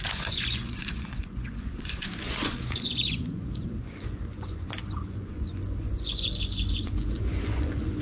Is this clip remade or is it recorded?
remade